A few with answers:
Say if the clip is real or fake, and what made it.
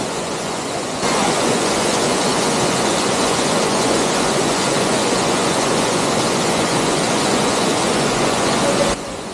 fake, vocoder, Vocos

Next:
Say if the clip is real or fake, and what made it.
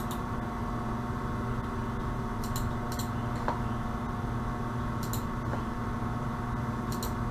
real